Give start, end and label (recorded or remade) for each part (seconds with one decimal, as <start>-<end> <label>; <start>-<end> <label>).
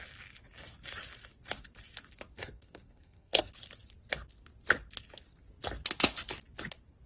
0.0-2.4 recorded; 2.4-3.5 remade; 3.5-7.1 recorded